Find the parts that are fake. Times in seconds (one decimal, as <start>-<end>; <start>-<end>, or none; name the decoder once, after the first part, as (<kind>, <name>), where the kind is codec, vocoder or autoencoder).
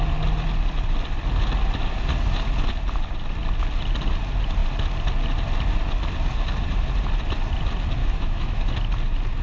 8.0-8.6 (autoencoder, DAC-VAE)